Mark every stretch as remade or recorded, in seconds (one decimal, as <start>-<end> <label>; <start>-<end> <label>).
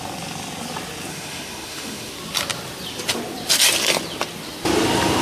0.0-1.1 recorded; 1.1-2.1 remade; 2.1-5.2 recorded